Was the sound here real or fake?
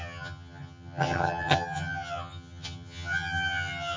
fake